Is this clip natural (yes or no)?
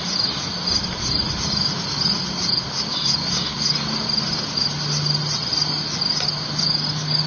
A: yes